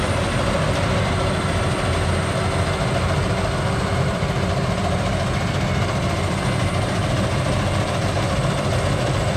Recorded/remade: recorded